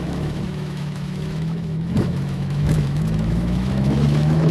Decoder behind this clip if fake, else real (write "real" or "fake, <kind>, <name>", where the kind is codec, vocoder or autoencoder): fake, autoencoder, DAC-VAE